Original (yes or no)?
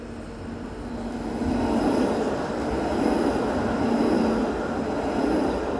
yes